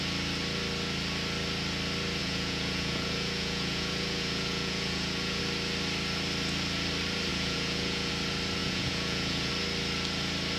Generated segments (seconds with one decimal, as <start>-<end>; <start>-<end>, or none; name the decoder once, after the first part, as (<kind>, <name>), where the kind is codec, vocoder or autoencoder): 2.2-5.4 (vocoder, Vocos); 7.3-8.1; 8.6-9.5